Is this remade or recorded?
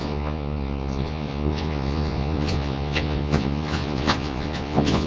remade